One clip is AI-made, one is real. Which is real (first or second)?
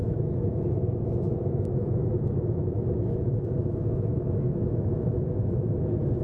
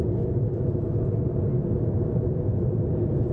second